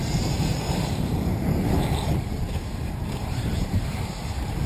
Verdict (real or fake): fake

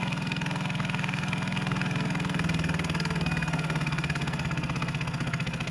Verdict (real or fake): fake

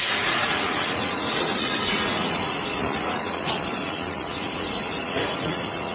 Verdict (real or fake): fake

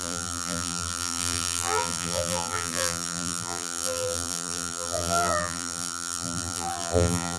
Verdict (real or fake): fake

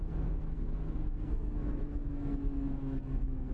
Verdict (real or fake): fake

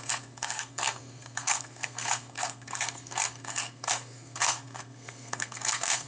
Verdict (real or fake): fake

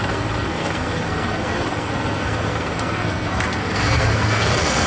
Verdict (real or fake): fake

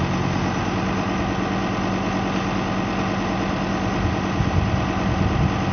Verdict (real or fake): real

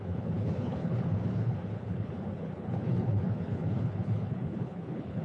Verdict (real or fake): fake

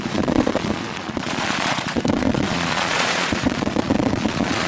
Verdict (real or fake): fake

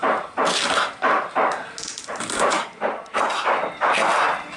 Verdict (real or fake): real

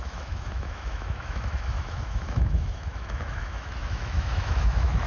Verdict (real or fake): fake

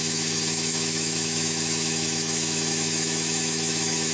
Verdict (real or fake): fake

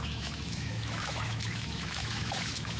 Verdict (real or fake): fake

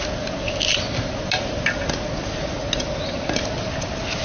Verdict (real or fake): real